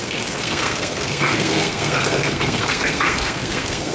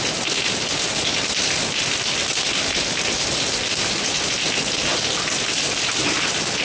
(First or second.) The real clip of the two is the second